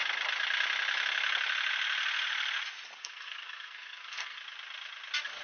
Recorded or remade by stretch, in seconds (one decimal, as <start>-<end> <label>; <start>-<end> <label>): 0.0-3.0 recorded; 3.0-4.4 remade; 4.4-5.4 recorded